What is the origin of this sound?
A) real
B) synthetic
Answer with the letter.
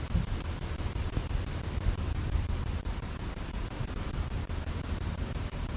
A